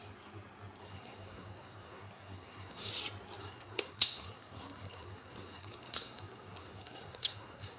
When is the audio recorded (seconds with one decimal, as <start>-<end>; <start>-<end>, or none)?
0.0-0.8; 2.9-3.4